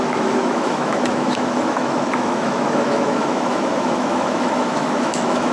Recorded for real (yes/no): no